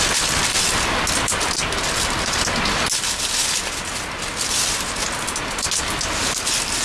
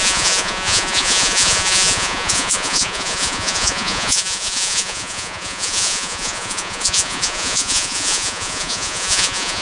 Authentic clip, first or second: first